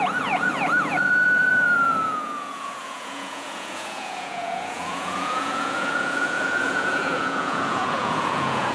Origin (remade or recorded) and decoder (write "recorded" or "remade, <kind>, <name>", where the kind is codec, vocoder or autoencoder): remade, vocoder, Vocos